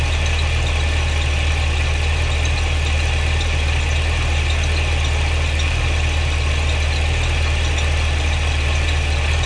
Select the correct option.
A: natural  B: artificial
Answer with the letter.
A